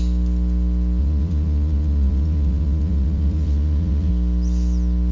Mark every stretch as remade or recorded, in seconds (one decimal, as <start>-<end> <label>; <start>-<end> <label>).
0.0-1.0 recorded; 1.0-4.1 remade; 4.1-5.1 recorded